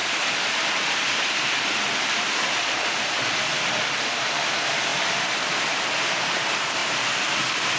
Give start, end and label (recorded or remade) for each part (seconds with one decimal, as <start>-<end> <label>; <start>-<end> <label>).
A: 0.0-7.8 remade